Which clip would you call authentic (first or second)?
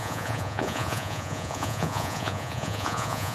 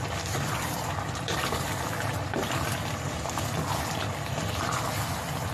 second